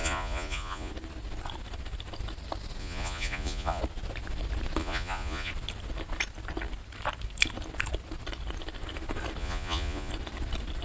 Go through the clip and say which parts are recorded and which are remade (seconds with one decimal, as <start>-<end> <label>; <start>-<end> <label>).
0.0-0.9 remade; 0.9-2.8 recorded; 2.8-3.8 remade; 3.8-4.8 recorded; 4.8-5.5 remade; 5.5-9.4 recorded; 9.4-10.1 remade; 10.1-10.8 recorded